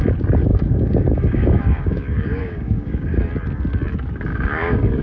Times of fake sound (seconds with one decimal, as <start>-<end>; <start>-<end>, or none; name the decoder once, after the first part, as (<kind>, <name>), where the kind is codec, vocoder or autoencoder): 0.5-3.2 (codec, DAC); 4.3-5.0